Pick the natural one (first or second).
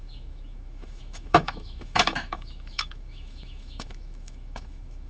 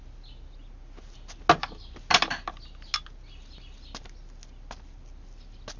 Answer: second